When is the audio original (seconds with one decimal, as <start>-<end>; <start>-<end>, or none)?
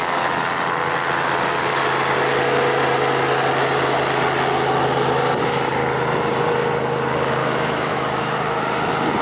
0.0-7.4; 8.4-9.2